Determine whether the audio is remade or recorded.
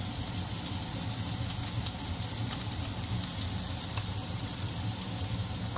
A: recorded